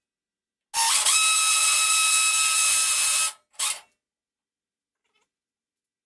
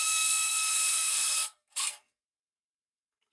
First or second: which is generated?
second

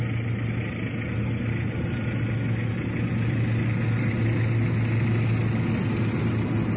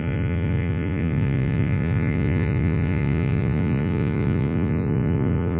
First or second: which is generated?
second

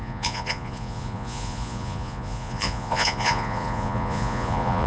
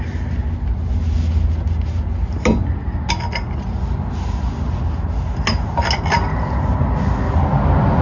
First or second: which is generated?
first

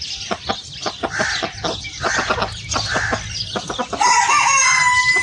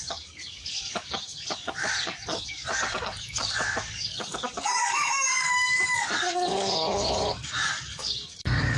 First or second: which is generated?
second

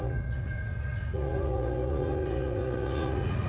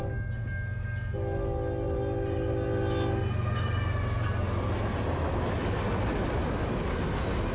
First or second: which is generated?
first